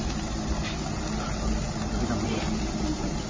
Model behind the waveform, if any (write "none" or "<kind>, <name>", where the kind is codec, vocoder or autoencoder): none